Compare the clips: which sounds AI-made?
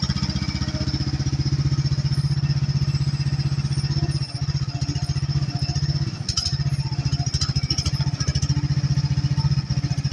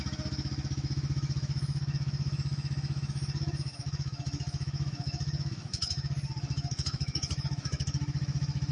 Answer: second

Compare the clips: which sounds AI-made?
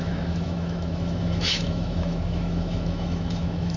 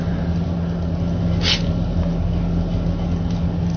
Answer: first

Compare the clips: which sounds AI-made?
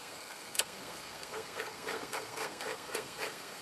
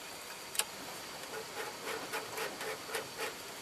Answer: first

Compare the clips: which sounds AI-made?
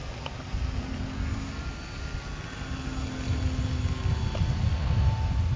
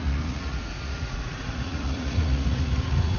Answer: second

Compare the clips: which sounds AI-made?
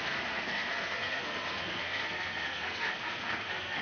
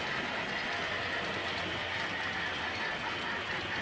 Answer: first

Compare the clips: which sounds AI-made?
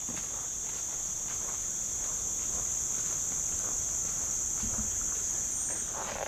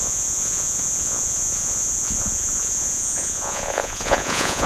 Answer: second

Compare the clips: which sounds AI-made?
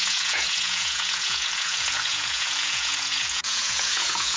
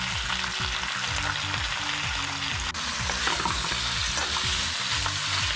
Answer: first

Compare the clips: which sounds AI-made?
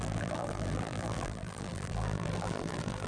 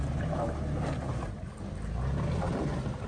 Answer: first